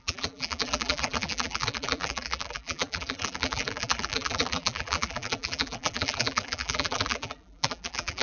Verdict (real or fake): fake